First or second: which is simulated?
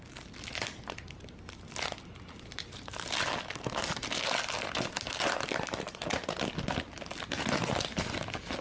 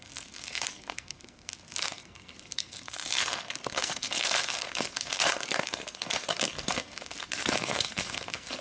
second